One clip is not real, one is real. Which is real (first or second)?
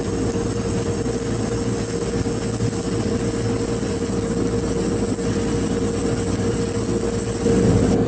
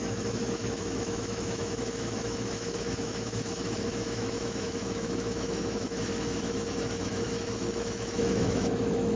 first